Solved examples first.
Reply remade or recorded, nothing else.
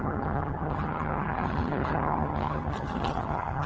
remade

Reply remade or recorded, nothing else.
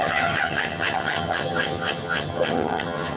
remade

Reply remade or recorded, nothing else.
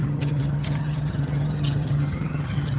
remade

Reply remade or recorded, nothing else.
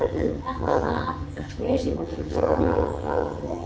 remade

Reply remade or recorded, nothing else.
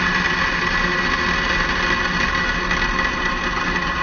recorded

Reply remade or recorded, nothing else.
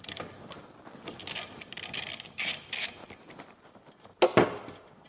recorded